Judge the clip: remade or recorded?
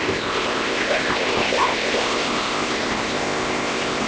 remade